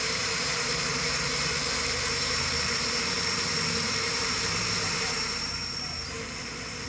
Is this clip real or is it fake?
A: fake